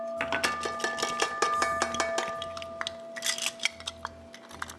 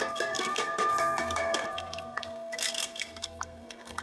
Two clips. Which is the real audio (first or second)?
first